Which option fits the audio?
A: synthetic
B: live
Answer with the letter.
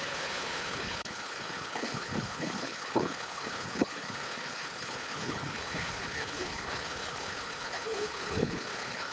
A